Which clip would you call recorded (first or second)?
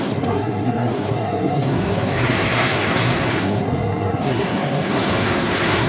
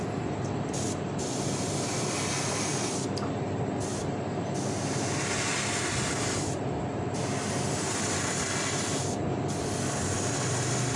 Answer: second